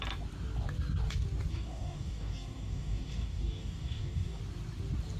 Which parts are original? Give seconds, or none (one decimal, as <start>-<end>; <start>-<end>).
0.0-1.5; 4.4-5.2